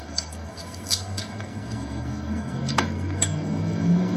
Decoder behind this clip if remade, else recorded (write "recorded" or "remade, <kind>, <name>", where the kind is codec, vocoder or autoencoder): remade, codec, SNAC